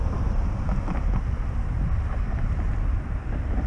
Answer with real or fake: fake